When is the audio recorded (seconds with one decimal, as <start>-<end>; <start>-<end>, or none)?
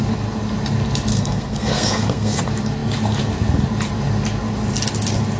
0.0-1.1; 2.4-5.4